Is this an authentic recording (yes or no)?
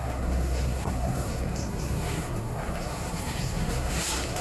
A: no